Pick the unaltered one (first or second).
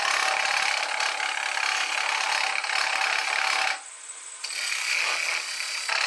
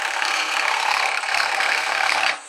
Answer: first